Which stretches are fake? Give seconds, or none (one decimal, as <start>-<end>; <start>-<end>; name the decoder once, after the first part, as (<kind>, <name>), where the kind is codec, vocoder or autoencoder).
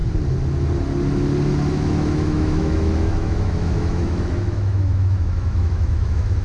1.7-6.4 (autoencoder, DAC-VAE)